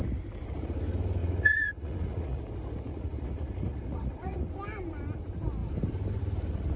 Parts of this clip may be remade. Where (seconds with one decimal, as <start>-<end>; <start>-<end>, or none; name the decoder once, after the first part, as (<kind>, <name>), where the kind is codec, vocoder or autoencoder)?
1.2-2.4 (vocoder, Vocos); 2.9-4.4